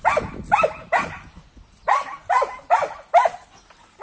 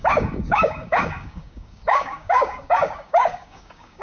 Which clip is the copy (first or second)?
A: second